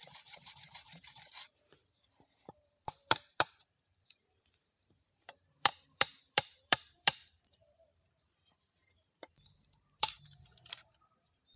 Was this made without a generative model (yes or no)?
no